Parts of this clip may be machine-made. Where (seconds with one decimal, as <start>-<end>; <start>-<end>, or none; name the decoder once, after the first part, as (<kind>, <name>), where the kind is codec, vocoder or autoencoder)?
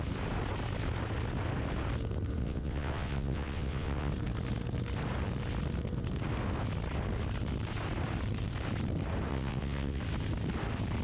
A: 2.4-4.1 (vocoder, WaveNeXt); 9.3-10.0